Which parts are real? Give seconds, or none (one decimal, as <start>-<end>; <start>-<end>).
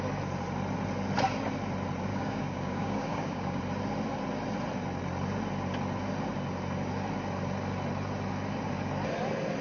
0.0-2.1; 3.6-9.6